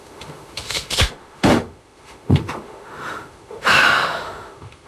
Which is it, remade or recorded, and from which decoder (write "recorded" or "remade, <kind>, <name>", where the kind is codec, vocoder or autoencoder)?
remade, autoencoder, DAC-VAE